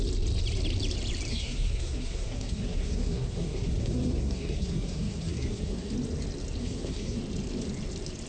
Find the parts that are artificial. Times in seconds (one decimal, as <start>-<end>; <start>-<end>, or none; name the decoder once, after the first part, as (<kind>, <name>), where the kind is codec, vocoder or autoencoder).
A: 1.3-5.9 (codec, SNAC); 6.6-7.2